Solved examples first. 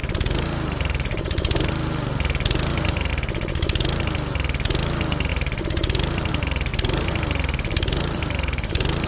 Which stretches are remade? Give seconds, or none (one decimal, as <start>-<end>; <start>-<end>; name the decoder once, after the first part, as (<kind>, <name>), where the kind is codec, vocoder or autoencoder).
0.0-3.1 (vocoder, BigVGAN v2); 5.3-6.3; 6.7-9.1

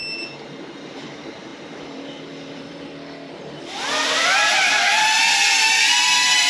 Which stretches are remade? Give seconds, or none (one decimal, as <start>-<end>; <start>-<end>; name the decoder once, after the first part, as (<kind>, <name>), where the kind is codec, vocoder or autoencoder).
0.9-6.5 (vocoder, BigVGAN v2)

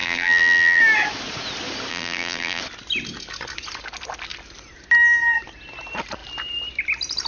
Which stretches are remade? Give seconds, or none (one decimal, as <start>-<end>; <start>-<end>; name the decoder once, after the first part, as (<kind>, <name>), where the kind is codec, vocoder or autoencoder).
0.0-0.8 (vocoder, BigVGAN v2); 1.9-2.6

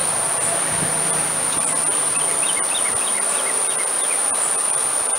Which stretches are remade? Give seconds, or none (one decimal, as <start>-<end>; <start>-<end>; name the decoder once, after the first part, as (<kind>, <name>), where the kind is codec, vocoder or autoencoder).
1.9-3.6 (vocoder, BigVGAN v2); 4.2-5.2

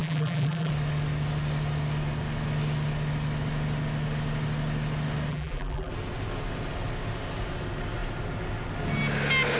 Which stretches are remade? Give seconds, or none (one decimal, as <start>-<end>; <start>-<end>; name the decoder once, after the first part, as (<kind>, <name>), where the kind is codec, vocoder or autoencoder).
0.0-0.7 (vocoder, BigVGAN v2); 5.3-5.9